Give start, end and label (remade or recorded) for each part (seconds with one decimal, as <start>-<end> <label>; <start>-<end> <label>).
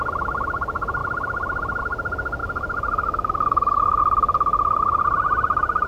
0.0-2.4 recorded; 2.4-4.0 remade; 4.0-5.9 recorded